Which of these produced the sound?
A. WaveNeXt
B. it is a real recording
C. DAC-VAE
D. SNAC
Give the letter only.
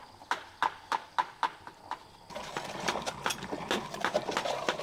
B